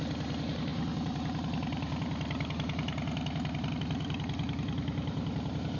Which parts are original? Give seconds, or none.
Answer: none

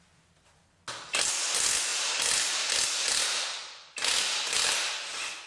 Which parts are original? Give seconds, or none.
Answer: 0.0-5.5

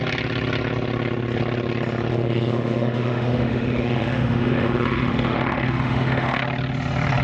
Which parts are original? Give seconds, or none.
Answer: 0.0-2.1; 6.4-7.2

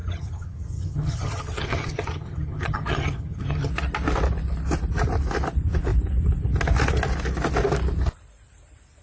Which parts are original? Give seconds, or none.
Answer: 3.7-9.0